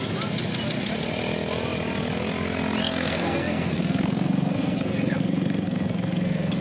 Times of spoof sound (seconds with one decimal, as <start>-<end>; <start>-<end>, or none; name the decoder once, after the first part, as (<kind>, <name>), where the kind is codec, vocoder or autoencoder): 2.8-6.6 (codec, SNAC)